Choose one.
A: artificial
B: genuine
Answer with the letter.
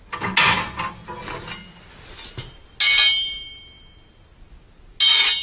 B